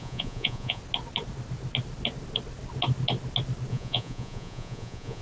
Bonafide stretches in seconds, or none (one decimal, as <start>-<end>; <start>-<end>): 0.8-3.7